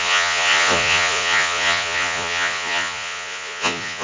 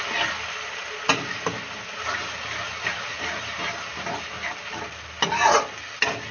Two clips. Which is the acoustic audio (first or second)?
second